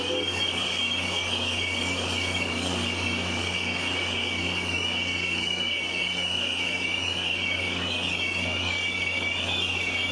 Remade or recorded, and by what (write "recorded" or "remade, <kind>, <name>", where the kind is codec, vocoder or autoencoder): remade, codec, DAC